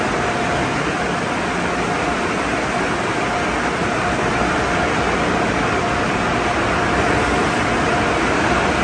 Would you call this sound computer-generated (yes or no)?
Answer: no